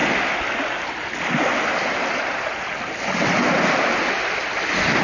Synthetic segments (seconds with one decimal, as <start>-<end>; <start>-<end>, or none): none